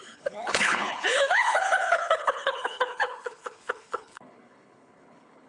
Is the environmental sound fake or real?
fake